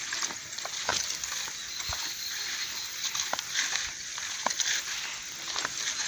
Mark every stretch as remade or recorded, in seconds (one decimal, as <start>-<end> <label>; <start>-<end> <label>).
0.0-6.1 recorded